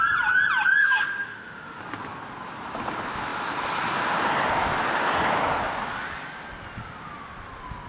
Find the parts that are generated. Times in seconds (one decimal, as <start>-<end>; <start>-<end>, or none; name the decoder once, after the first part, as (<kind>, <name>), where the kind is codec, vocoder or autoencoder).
0.8-1.8 (autoencoder, DAC-VAE)